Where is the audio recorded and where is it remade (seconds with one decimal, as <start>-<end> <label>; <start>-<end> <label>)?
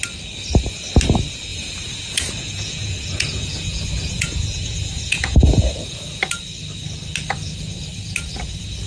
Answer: 0.0-1.5 recorded; 1.5-6.2 remade; 6.2-8.9 recorded